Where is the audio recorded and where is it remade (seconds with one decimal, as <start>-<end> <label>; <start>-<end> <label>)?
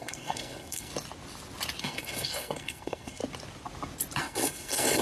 0.0-0.9 remade; 0.9-1.8 recorded; 1.8-3.2 remade; 3.2-4.2 recorded; 4.2-5.0 remade